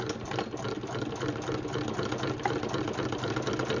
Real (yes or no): yes